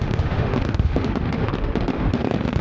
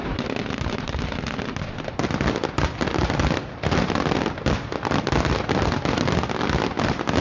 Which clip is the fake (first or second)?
first